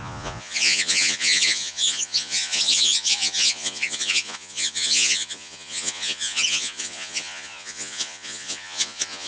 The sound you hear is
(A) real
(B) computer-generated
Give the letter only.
B